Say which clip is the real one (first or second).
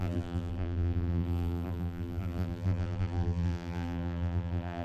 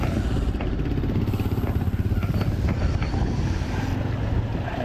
second